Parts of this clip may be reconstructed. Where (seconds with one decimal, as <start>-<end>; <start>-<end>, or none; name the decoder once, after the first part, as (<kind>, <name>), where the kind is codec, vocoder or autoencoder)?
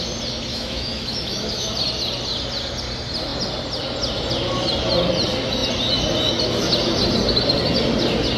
0.5-1.7 (autoencoder, DAC-VAE)